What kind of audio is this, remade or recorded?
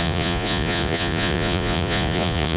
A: remade